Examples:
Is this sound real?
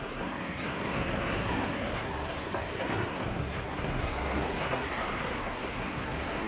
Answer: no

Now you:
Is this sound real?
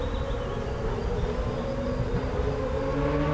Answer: yes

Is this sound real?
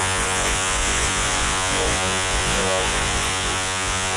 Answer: no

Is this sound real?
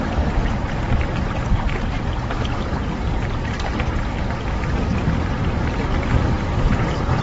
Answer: no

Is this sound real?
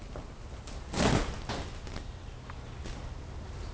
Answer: yes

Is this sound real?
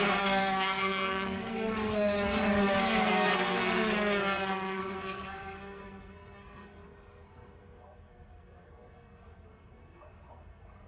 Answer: no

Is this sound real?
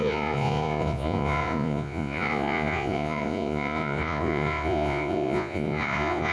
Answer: no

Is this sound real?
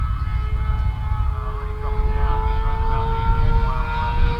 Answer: yes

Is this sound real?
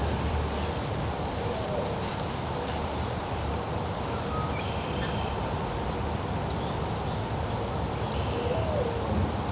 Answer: no